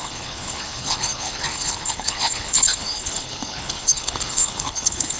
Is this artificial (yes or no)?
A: yes